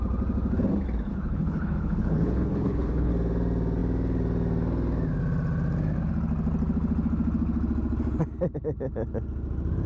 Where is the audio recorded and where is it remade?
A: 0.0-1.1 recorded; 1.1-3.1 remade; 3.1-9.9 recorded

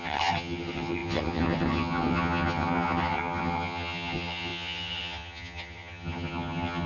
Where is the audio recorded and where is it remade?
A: 0.0-6.9 remade

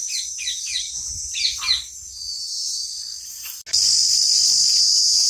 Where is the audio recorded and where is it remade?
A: 0.0-5.3 recorded

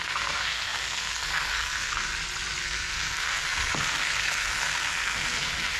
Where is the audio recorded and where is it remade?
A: 0.0-2.1 remade; 2.1-2.6 recorded; 2.6-5.8 remade

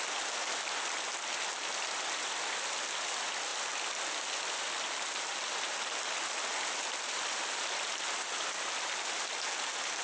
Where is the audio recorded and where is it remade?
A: 0.0-10.0 recorded